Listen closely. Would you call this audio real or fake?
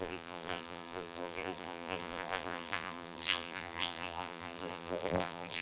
fake